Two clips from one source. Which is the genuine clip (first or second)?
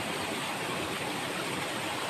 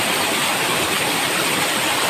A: first